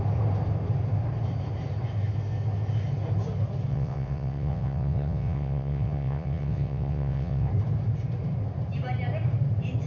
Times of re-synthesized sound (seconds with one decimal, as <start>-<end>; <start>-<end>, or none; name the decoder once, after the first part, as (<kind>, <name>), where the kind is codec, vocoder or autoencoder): 3.7-7.5 (vocoder, WaveNeXt)

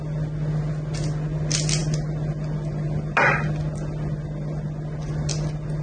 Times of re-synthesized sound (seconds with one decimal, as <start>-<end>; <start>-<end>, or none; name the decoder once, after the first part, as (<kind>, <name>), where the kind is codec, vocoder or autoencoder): none